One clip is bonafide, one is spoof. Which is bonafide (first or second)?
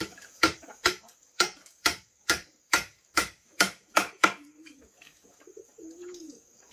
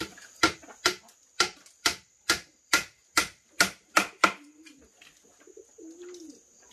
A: second